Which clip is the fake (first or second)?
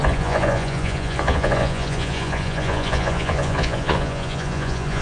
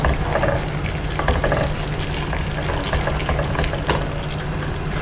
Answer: first